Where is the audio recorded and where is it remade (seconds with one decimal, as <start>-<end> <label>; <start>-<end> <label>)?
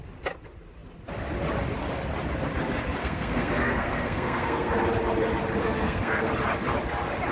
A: 0.0-3.0 recorded; 3.0-4.7 remade; 4.7-5.6 recorded; 5.6-6.3 remade; 6.3-7.3 recorded